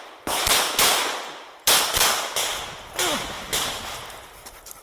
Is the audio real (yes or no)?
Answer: yes